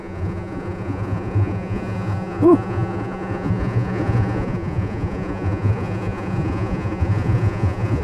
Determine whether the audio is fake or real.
fake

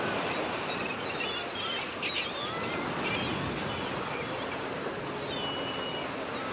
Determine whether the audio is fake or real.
real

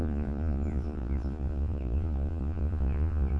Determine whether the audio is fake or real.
fake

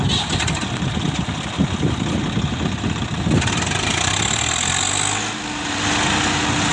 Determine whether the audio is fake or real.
real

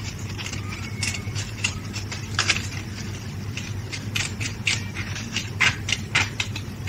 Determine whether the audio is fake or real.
fake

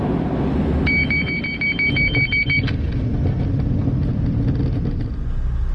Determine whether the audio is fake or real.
real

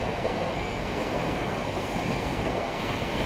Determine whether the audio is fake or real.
fake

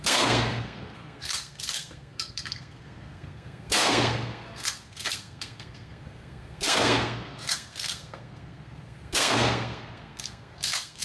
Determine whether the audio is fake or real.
fake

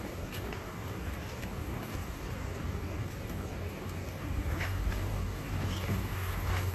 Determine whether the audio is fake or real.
fake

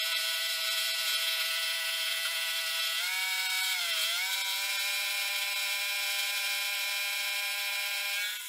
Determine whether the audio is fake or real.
fake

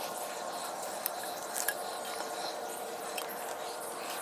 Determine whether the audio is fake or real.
real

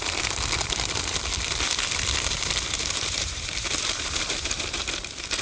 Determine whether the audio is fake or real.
fake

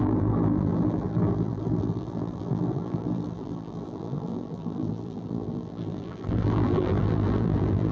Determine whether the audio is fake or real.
fake